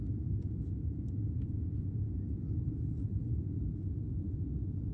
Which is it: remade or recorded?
recorded